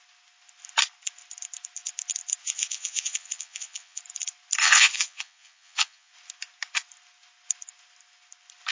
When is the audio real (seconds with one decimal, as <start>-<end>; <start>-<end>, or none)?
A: 0.0-2.4; 4.0-4.6; 6.1-8.7